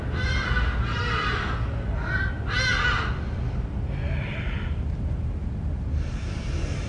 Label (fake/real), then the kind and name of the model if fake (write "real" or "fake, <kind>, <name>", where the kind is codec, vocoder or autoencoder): real